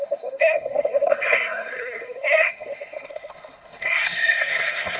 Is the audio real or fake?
fake